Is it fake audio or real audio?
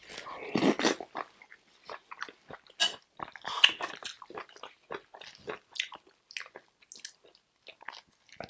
real